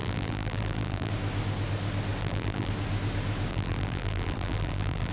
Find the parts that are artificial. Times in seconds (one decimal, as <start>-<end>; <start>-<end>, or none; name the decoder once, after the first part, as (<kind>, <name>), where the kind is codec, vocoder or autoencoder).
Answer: 0.0-1.1 (vocoder, BigVGAN v2); 2.2-2.7; 3.5-5.1